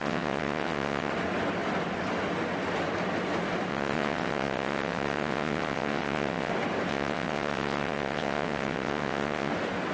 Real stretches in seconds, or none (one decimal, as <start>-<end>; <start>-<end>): 1.1-3.7; 6.5-6.9; 9.5-9.9